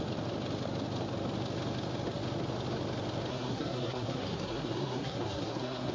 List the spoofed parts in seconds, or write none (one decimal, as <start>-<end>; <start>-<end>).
3.3-5.9